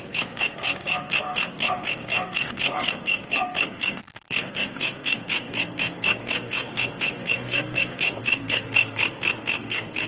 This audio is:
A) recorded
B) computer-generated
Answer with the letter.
B